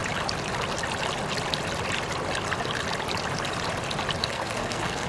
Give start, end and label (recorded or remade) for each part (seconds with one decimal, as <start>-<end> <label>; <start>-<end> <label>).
0.0-4.2 recorded; 4.2-5.1 remade